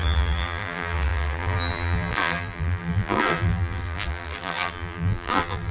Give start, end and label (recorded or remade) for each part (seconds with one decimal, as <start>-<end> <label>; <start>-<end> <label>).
0.0-5.7 remade